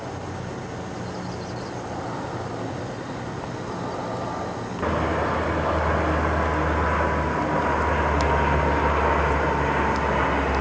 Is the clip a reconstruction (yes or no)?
no